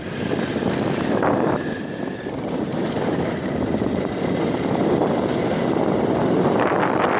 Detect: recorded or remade recorded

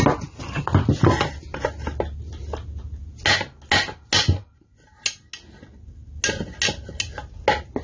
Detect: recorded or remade recorded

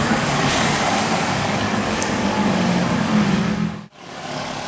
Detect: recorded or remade remade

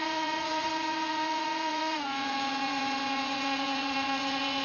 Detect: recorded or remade remade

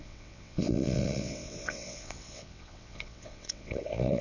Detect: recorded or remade remade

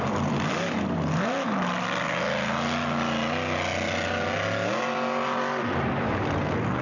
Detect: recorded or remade recorded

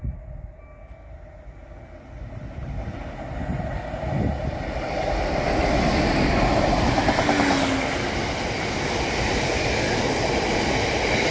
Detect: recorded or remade recorded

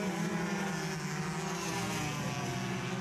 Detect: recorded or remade recorded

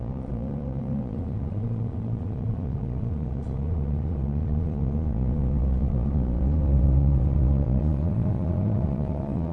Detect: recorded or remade remade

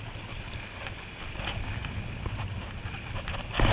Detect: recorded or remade recorded